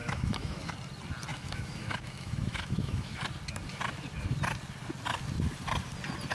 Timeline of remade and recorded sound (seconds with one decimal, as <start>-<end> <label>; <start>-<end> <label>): 0.0-0.7 remade; 0.7-1.3 recorded; 1.3-3.2 remade; 3.2-6.3 recorded